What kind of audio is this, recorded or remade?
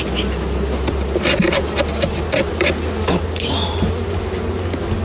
recorded